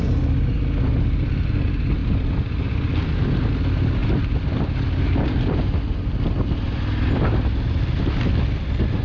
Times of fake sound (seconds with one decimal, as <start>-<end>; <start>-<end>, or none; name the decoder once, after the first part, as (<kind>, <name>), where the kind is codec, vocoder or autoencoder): 2.0-3.1 (vocoder, BigVGAN v2); 4.0-4.5